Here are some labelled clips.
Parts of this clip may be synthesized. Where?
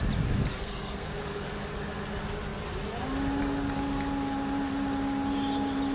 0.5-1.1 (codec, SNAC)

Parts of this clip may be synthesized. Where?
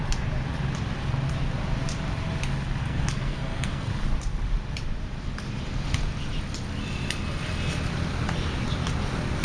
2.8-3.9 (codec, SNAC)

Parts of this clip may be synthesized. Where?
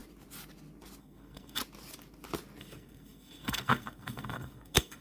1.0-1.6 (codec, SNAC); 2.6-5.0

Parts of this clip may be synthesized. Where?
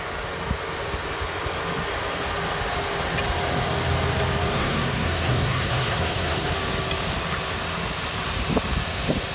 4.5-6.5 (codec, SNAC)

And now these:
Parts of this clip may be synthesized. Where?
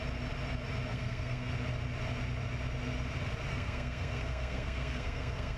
0.9-1.5 (codec, SNAC); 3.5-5.6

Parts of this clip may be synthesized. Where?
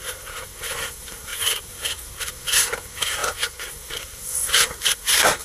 0.0-5.4 (codec, SNAC)